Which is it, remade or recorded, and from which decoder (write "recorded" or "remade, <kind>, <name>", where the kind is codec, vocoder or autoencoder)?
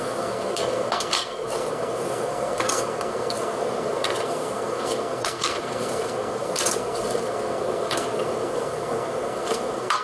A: remade, codec, SNAC